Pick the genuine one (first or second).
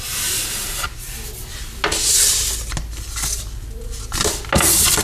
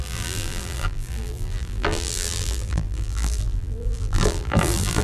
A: first